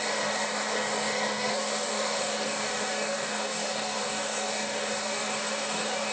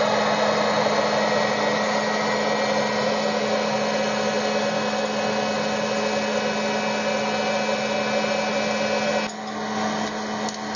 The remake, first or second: first